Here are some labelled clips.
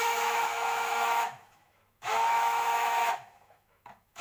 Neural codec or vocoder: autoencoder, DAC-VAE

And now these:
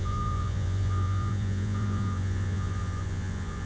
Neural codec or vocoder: vocoder, Vocos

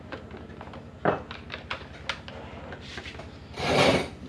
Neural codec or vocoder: none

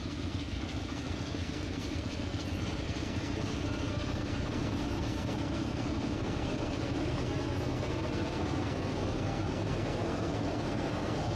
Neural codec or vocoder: codec, SNAC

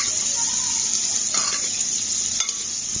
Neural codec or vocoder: none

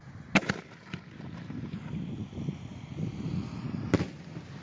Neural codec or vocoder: none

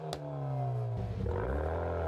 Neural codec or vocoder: none